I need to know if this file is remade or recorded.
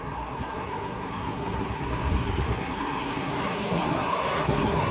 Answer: remade